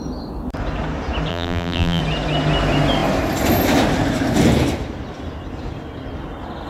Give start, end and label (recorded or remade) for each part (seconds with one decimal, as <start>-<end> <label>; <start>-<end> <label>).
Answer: 0.0-1.3 recorded; 1.3-2.0 remade; 2.0-6.7 recorded